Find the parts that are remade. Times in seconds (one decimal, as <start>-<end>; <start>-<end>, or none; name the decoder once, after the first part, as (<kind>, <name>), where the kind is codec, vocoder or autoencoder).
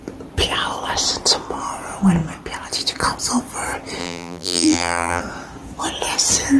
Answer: 4.0-5.2 (vocoder, BigVGAN v2)